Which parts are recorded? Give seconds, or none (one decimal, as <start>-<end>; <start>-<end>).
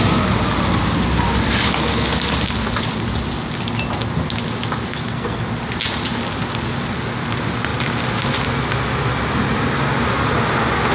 0.0-4.9; 5.4-10.9